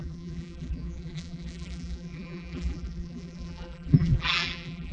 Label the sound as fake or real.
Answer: fake